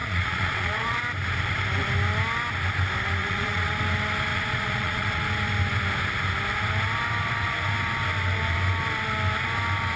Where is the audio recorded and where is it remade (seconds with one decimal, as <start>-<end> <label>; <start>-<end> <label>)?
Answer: 0.0-1.0 remade; 1.0-3.2 recorded; 3.2-3.7 remade; 3.7-4.3 recorded; 4.3-5.2 remade; 5.2-10.0 recorded